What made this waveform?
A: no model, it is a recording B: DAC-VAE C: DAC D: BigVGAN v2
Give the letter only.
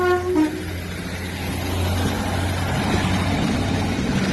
A